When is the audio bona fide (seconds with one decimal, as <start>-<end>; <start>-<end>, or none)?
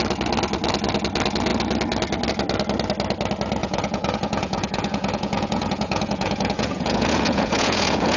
0.0-3.6